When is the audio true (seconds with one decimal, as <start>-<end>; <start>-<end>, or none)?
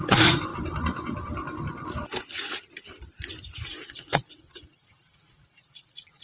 0.5-3.4